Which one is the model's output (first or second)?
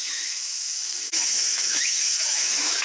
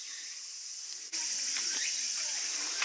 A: first